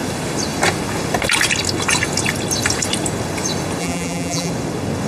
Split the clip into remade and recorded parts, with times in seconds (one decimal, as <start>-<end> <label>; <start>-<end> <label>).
0.0-3.8 recorded; 3.8-4.5 remade; 4.5-5.1 recorded